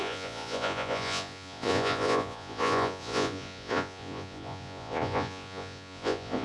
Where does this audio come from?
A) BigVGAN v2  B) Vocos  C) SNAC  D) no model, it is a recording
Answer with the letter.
B